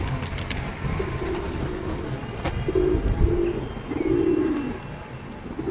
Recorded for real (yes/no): yes